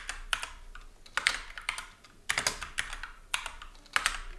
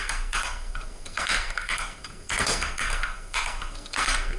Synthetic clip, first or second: second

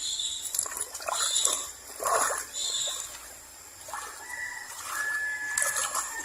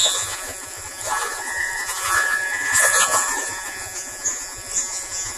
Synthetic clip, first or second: second